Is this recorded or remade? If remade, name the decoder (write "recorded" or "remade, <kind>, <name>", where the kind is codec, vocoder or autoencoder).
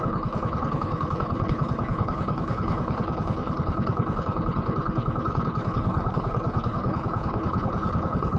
remade, codec, HILCodec